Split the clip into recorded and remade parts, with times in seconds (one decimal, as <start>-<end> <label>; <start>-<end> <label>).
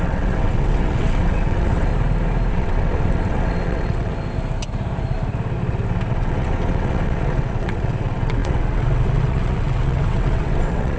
0.0-1.9 remade; 1.9-2.5 recorded; 2.5-4.1 remade; 4.1-6.1 recorded; 6.1-11.0 remade